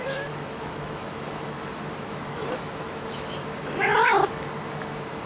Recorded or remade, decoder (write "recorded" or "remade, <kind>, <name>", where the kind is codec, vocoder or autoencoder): remade, autoencoder, DAC-VAE